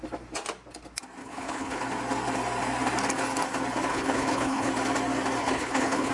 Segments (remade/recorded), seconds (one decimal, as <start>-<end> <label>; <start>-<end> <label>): 0.0-1.2 recorded; 1.2-1.8 remade; 1.8-3.9 recorded; 3.9-4.7 remade; 4.7-5.4 recorded; 5.4-6.1 remade